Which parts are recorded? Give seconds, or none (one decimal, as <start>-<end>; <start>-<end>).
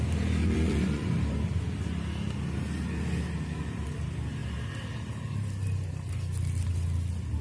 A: 0.0-0.4; 1.2-7.4